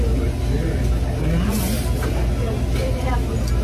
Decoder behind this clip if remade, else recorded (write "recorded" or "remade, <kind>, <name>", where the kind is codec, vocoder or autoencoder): recorded